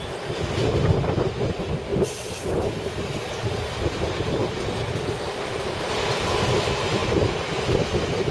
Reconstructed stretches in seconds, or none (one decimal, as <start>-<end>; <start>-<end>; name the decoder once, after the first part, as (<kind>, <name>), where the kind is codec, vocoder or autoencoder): none